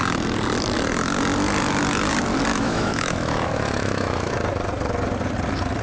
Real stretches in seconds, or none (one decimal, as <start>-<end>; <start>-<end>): 0.0-2.5; 4.3-5.8